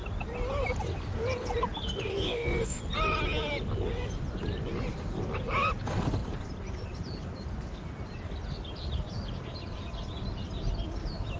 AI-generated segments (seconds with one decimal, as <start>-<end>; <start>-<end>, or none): 2.1-2.8